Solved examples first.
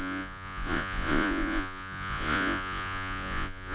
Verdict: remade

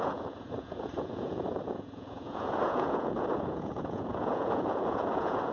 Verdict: remade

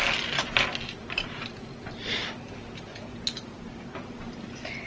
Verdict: recorded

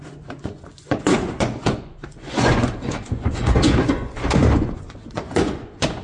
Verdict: remade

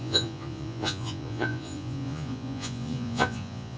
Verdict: remade